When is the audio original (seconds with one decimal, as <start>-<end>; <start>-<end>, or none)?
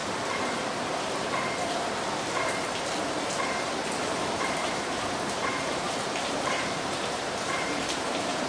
0.0-3.7